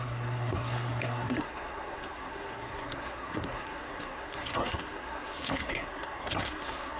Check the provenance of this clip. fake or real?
fake